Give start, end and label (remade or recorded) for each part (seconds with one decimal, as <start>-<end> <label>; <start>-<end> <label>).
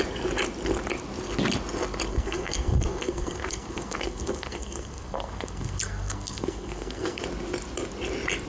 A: 0.0-2.1 recorded; 2.1-7.2 remade; 7.2-8.5 recorded